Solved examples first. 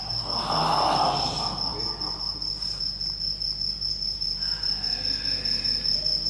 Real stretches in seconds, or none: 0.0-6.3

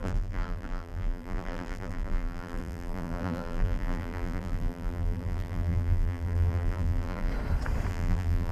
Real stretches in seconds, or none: 7.3-7.9

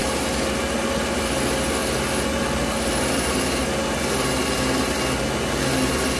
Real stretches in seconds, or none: 0.0-6.2

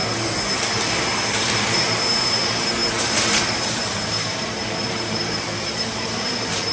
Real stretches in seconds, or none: 0.0-1.0

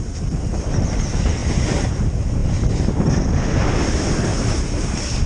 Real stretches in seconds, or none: 0.0-1.4; 2.0-4.3; 4.8-5.3

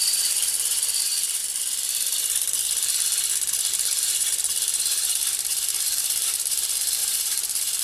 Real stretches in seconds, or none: 1.4-3.7